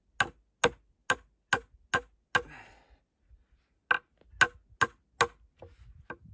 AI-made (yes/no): no